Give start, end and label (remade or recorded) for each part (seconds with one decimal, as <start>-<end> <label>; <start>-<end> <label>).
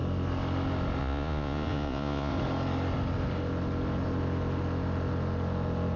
0.0-1.0 recorded; 1.0-2.3 remade; 2.3-6.0 recorded